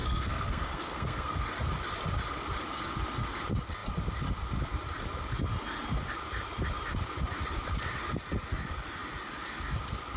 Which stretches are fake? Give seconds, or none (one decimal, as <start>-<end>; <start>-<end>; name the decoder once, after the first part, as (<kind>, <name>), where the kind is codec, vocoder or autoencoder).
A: 0.0-1.5 (codec, SNAC)